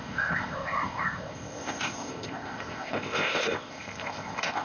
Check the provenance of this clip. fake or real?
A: fake